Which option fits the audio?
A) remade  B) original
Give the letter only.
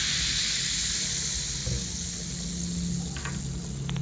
B